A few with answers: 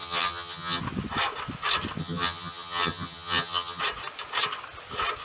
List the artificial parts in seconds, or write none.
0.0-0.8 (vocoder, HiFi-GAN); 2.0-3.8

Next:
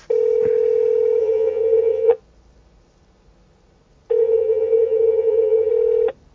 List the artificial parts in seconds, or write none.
1.2-2.2 (vocoder, HiFi-GAN); 4.2-5.7

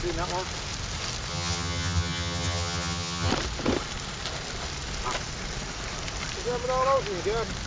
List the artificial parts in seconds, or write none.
1.3-3.3 (vocoder, HiFi-GAN)

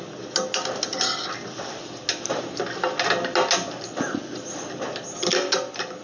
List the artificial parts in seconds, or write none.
none